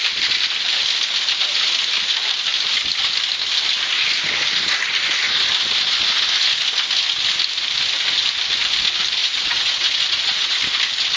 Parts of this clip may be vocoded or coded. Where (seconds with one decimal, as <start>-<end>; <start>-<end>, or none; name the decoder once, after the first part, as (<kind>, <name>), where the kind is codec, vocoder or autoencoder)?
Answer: 9.2-10.6 (vocoder, Vocos)